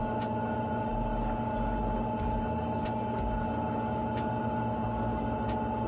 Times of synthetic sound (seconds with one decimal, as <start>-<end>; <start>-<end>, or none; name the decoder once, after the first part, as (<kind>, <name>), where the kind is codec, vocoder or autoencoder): none